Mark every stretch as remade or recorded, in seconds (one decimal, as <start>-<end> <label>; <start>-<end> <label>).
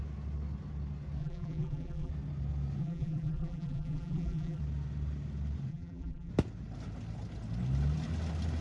0.0-1.2 recorded; 1.2-2.1 remade; 2.1-2.8 recorded; 2.8-4.6 remade; 4.6-5.7 recorded; 5.7-6.3 remade; 6.3-8.6 recorded